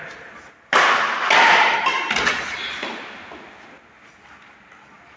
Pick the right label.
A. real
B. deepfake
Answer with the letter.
A